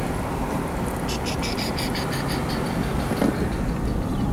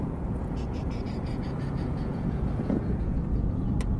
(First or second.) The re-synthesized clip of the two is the second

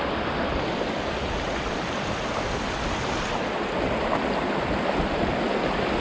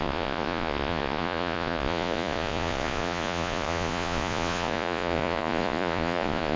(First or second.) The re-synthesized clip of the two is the second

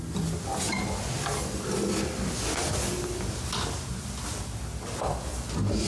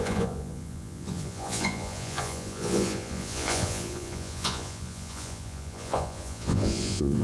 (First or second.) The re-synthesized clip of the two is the second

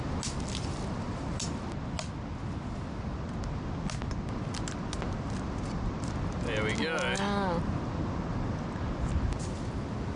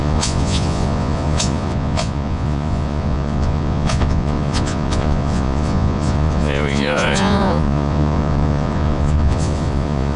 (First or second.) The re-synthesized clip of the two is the second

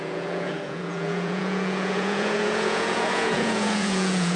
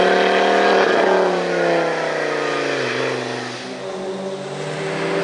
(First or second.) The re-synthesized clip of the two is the first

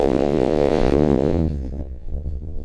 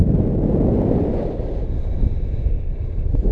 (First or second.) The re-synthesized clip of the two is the first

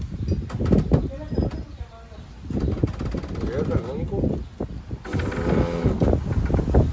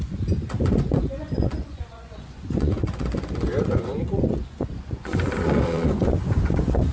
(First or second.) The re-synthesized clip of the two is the second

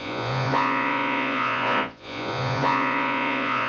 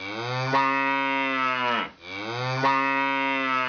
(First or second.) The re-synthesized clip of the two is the first